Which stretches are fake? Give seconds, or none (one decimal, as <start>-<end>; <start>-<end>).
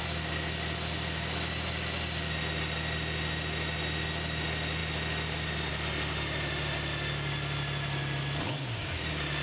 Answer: none